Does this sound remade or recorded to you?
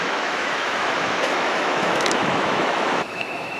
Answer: remade